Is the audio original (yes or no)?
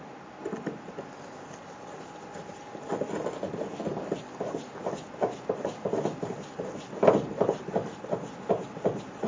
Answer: yes